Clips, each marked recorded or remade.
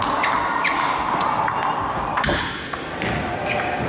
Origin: recorded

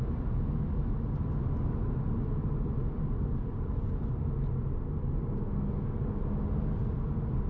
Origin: recorded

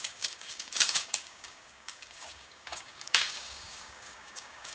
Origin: remade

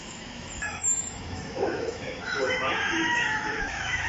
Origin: remade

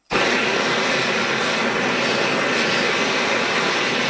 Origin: recorded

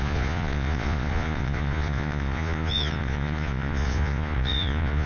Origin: remade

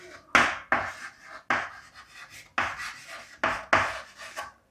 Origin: recorded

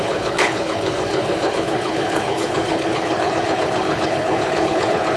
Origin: remade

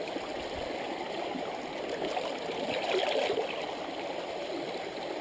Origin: recorded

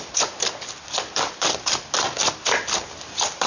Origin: remade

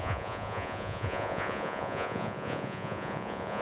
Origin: remade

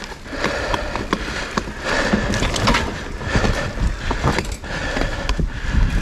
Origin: recorded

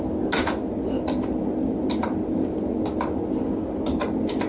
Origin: recorded